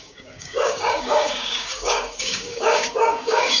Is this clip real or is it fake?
fake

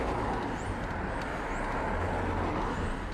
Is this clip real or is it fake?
real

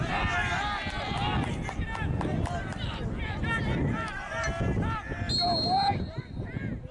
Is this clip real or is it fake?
real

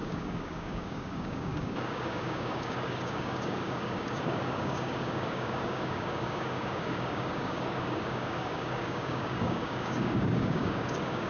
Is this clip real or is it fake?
fake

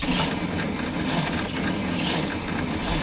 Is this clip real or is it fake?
real